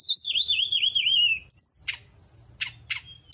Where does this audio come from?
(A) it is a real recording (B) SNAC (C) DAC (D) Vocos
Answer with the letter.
A